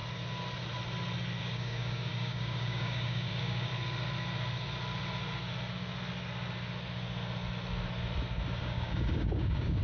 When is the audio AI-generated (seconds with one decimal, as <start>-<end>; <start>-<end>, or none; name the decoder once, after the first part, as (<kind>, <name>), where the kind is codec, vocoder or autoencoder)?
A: 1.4-3.7 (codec, DAC); 8.6-9.8